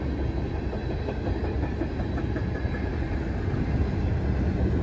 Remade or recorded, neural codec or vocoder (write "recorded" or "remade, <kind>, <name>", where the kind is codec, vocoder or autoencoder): recorded